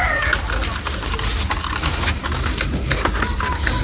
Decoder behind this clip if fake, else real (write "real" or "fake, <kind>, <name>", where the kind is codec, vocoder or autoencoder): real